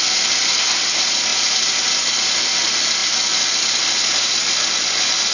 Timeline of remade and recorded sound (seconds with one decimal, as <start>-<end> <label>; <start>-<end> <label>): 0.0-5.3 recorded